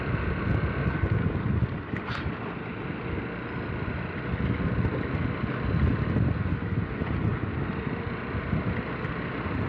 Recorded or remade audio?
recorded